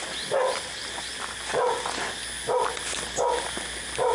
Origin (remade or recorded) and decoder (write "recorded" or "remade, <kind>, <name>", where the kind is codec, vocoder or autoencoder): recorded